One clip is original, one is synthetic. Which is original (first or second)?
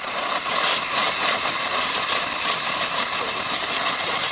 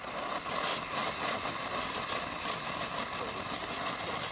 second